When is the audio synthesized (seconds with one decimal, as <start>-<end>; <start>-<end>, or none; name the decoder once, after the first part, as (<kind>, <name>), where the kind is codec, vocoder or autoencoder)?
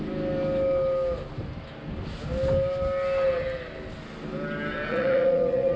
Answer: 4.9-5.8 (vocoder, Vocos)